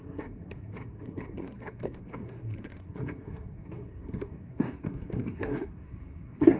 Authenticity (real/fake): fake